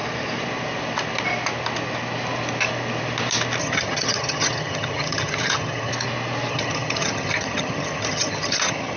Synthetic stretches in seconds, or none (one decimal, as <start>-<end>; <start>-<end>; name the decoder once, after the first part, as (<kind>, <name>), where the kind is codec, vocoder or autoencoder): 3.6-5.9 (vocoder, HiFi-GAN); 6.5-9.0